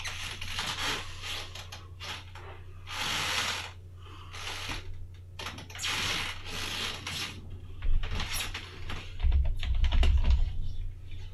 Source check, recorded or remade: recorded